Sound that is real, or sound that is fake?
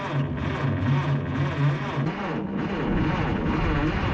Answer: real